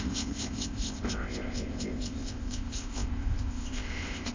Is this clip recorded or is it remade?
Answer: remade